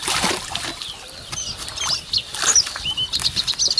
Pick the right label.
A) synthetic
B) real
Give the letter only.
B